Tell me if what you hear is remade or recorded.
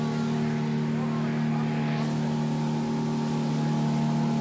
recorded